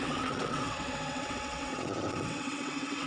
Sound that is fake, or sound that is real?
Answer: fake